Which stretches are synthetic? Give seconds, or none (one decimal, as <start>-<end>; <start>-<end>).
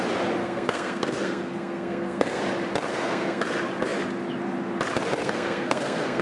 0.4-2.4; 2.9-3.4; 5.2-6.2